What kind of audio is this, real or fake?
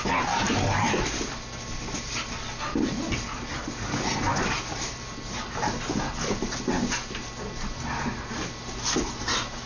real